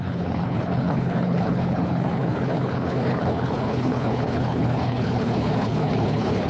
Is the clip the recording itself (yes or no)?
no